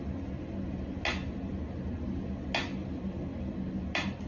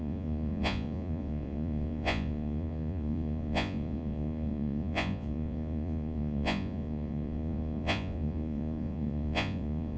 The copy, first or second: second